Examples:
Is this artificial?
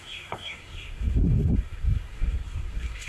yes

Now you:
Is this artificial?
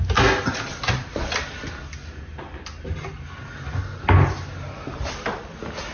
no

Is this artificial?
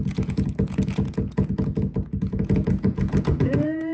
yes